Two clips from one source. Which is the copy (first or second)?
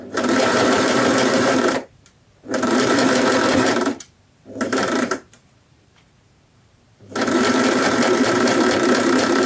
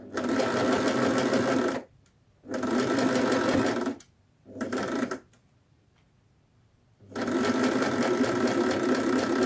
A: first